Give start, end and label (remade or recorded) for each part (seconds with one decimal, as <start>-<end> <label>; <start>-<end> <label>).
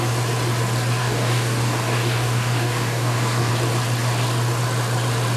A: 0.0-1.0 recorded; 1.0-3.5 remade; 3.5-5.4 recorded